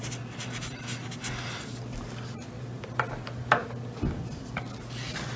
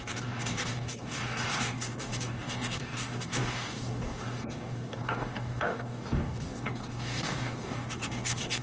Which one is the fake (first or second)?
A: second